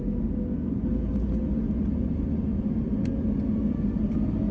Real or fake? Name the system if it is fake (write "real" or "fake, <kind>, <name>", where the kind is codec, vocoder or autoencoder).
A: real